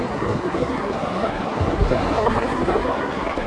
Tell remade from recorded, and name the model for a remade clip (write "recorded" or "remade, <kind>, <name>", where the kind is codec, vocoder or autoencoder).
remade, codec, SNAC